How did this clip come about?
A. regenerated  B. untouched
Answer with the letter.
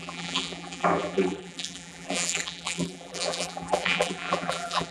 A